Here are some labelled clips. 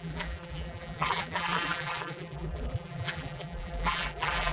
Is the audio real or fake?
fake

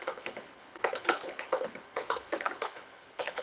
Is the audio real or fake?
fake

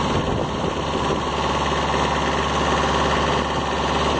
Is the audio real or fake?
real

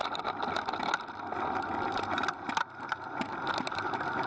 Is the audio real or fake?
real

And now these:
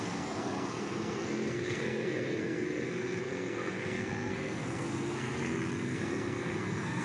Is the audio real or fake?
fake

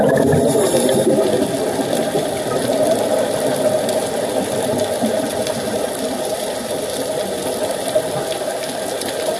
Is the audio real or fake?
real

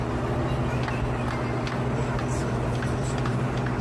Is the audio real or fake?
real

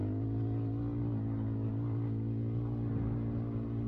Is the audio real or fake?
real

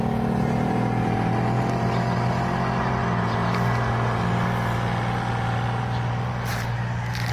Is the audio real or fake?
real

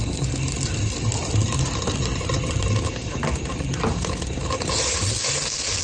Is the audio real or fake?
real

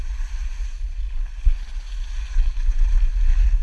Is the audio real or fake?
real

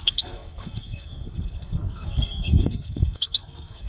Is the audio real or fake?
fake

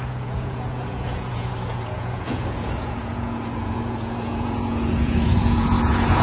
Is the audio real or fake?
fake